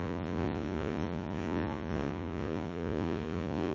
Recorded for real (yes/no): no